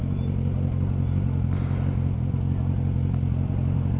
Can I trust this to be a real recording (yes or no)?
yes